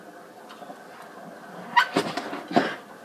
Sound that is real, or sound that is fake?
real